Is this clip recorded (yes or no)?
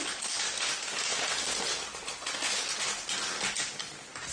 yes